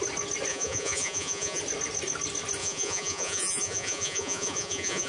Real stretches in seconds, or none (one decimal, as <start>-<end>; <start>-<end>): 0.0-0.5; 1.6-2.6

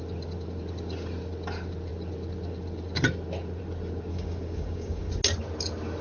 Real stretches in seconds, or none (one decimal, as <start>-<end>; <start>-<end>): 0.0-4.1; 5.1-6.0

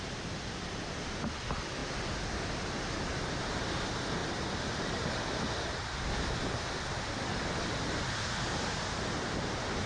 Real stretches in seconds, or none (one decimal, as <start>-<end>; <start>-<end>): 0.0-9.9

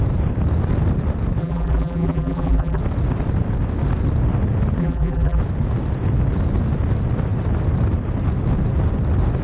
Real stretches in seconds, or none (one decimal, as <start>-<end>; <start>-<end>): 0.0-1.4; 2.8-4.8; 5.4-9.4

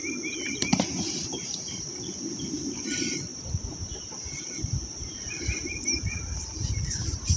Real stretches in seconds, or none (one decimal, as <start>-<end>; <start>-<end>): none